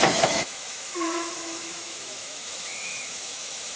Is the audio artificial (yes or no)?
yes